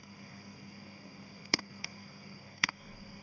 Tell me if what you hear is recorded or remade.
remade